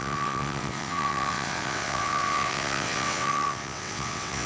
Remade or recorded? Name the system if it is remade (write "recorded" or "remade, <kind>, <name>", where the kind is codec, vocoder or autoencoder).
remade, vocoder, WaveNeXt